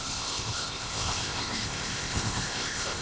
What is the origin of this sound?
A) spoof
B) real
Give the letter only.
A